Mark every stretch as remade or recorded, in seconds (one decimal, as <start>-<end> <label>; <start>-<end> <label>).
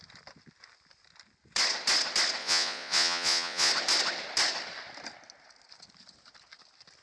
0.0-2.4 recorded; 2.4-3.7 remade; 3.7-7.0 recorded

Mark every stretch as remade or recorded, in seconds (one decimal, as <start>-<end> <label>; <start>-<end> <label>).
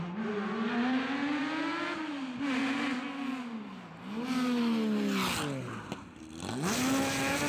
0.0-7.5 recorded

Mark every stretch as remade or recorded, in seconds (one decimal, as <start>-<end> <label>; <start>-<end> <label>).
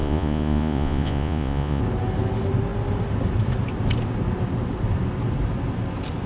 0.0-1.8 remade; 1.8-6.3 recorded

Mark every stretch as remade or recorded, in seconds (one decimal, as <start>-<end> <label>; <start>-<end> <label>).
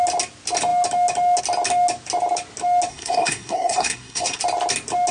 0.0-2.9 recorded; 2.9-4.4 remade; 4.4-5.1 recorded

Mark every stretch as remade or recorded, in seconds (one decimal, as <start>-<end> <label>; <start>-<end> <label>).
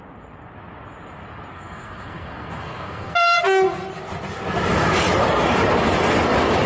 0.0-1.5 recorded; 1.5-3.4 remade; 3.4-6.7 recorded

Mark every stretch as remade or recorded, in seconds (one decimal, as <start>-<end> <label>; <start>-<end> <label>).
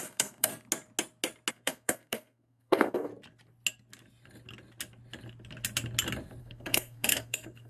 0.0-0.5 remade; 0.5-1.5 recorded; 1.5-3.1 remade; 3.1-6.4 recorded; 6.4-7.7 remade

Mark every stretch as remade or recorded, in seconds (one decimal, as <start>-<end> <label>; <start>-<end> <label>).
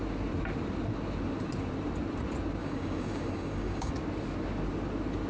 0.0-2.6 recorded; 2.6-3.9 remade; 3.9-5.3 recorded